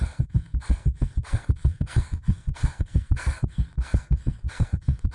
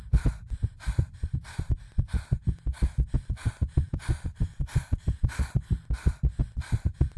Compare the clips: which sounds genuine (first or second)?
second